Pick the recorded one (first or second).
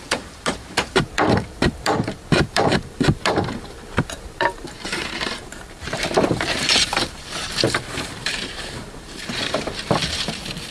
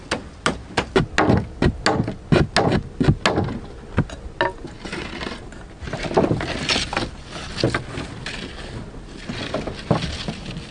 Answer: second